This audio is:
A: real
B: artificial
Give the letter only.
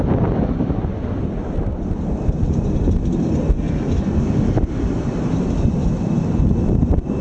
A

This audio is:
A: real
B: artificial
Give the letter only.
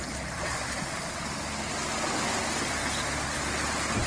A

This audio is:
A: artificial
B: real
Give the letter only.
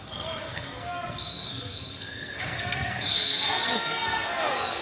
A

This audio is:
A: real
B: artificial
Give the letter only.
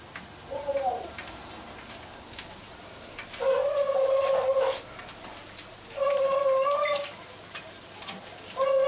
A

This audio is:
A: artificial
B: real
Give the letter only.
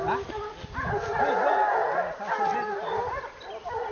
B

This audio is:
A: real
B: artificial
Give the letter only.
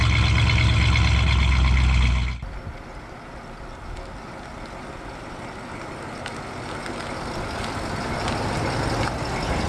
A